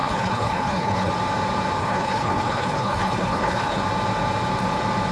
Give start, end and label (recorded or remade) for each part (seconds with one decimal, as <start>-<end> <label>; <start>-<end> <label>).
0.0-1.1 remade; 1.1-1.8 recorded; 1.8-3.8 remade; 3.8-5.1 recorded